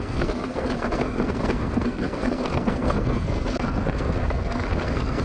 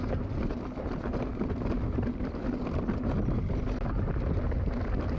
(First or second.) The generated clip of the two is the first